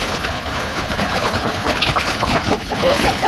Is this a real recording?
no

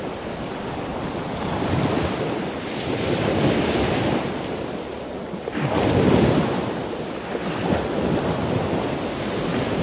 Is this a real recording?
yes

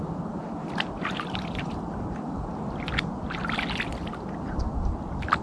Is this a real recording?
yes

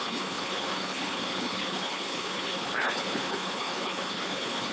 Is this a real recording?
no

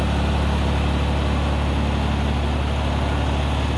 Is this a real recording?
yes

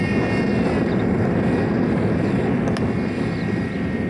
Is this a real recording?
yes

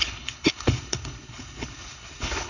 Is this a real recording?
no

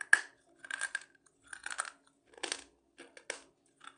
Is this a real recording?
yes